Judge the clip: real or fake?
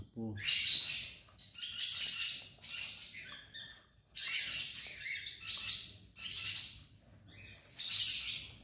real